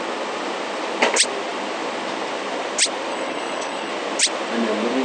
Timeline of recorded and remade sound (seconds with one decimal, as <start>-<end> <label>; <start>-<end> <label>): 0.0-3.1 recorded; 3.1-3.9 remade; 3.9-5.0 recorded